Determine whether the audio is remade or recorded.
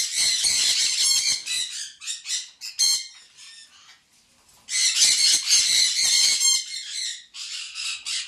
recorded